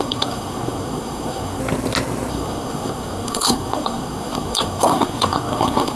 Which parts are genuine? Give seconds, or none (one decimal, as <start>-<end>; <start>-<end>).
1.6-2.3